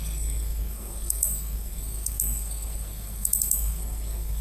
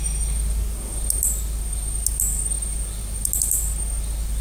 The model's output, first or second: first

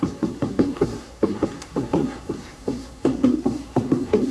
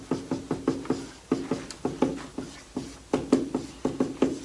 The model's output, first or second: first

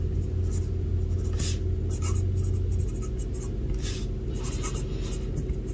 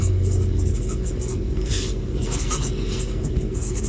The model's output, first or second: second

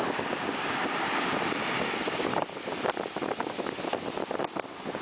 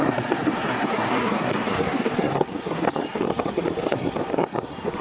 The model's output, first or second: second